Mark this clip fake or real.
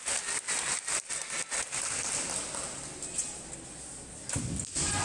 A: real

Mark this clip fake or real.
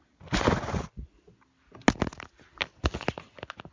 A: real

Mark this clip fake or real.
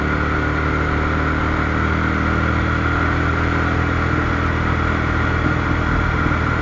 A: real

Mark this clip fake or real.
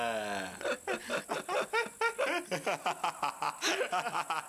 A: real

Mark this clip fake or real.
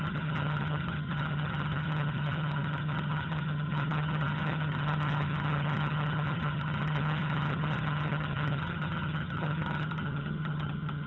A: fake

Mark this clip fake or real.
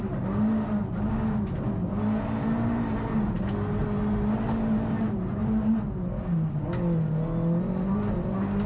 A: real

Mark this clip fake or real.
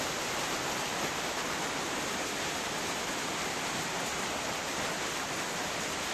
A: real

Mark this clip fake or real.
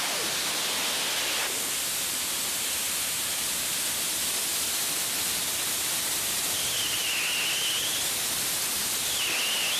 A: real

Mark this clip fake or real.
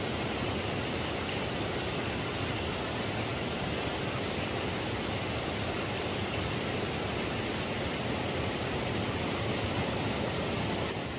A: real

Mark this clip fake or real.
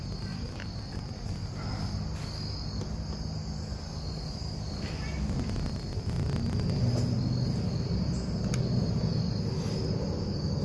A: real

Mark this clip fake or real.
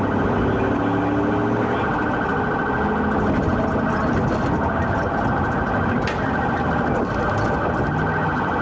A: real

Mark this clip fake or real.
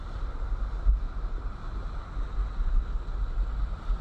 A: real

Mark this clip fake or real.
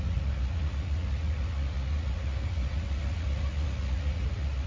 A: fake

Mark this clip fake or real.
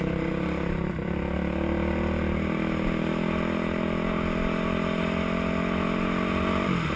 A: real